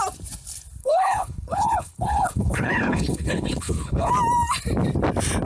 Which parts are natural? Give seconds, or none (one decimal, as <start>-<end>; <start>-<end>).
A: 0.0-0.8; 4.1-5.5